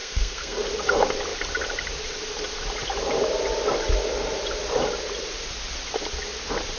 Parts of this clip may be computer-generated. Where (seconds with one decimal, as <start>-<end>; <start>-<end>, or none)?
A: 0.0-0.6